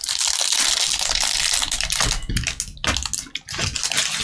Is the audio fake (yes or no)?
no